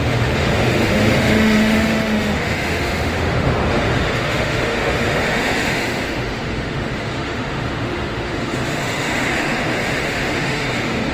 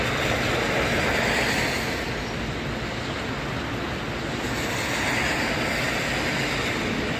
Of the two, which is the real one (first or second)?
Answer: second